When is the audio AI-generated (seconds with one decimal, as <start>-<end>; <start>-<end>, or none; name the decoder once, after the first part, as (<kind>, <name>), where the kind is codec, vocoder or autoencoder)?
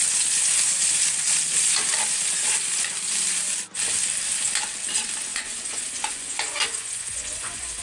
5.3-7.8 (vocoder, Vocos)